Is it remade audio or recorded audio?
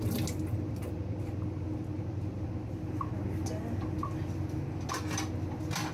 recorded